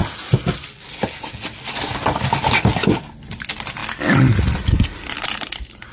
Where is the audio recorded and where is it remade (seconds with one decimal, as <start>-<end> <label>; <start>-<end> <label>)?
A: 0.0-5.9 recorded